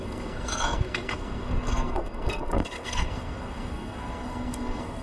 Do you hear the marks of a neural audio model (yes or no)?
yes